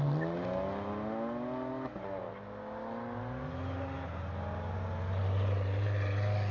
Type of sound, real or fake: real